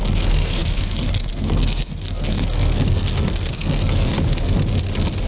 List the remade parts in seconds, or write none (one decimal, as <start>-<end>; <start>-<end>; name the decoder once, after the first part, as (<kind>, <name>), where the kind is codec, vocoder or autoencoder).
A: 0.0-4.1 (codec, SNAC)